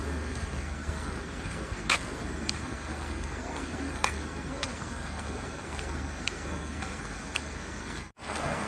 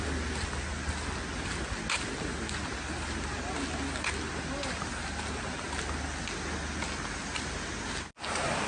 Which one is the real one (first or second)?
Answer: second